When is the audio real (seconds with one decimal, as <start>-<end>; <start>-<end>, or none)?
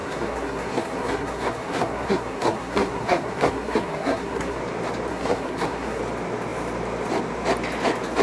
4.6-5.1; 6.0-8.2